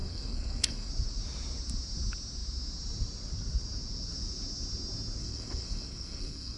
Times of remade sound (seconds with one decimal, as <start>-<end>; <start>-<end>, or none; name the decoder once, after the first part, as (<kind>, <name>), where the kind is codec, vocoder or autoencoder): 0.0-0.9 (codec, SNAC); 5.2-6.6